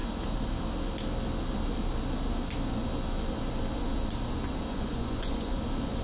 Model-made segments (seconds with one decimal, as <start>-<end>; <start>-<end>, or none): 4.7-5.6